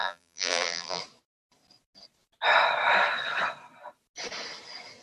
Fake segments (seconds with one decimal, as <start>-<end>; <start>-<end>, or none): 0.0-1.0